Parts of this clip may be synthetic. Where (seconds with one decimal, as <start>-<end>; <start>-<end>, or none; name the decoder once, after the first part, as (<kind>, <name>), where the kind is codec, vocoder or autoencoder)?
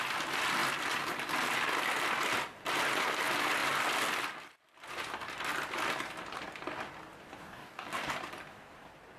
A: 7.4-8.1 (codec, DAC)